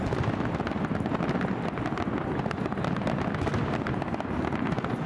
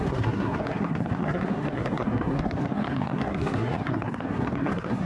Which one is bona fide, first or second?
first